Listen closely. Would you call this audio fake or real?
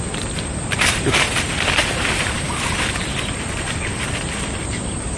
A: real